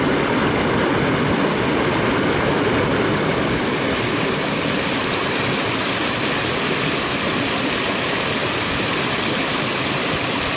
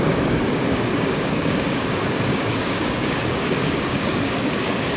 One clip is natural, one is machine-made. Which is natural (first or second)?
first